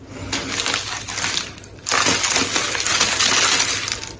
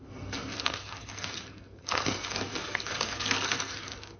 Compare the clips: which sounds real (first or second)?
first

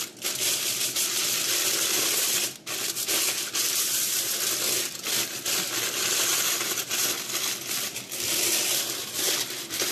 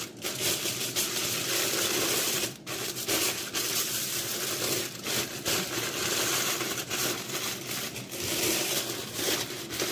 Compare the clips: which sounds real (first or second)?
first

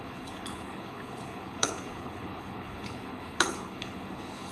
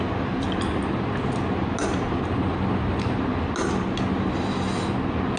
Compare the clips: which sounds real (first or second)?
second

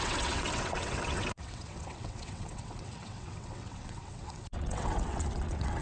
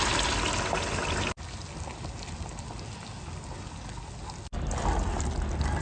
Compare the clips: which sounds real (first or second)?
second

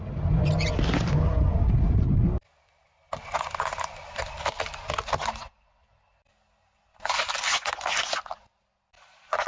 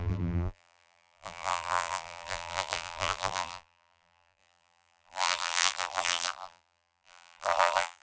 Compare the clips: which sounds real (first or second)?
first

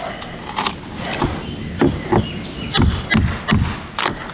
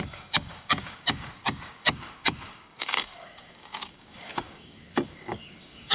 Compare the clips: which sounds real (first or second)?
first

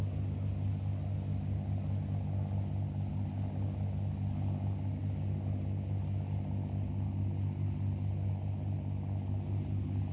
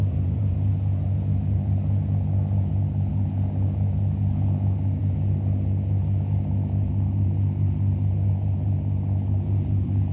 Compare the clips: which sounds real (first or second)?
first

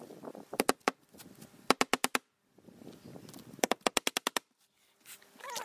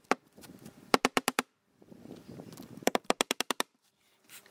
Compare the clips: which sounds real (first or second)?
first